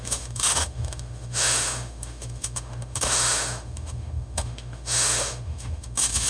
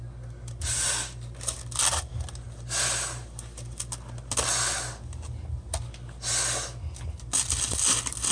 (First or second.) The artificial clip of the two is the first